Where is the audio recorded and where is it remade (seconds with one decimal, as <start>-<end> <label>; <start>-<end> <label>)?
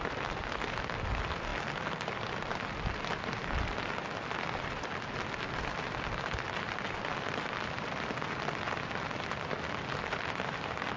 0.0-11.0 recorded